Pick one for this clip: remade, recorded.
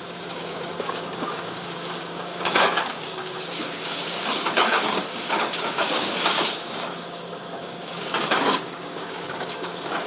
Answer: remade